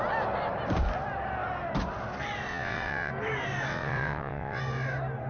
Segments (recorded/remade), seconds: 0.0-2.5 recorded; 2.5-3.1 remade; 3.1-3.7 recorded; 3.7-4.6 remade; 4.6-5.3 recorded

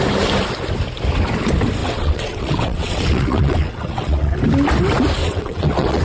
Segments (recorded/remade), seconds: 0.0-1.8 recorded; 1.8-4.4 remade; 4.4-5.2 recorded; 5.2-6.0 remade